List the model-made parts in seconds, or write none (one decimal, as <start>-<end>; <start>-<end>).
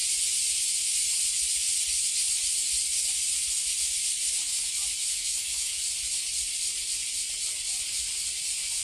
5.0-5.8